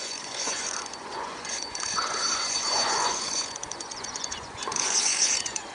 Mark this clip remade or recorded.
remade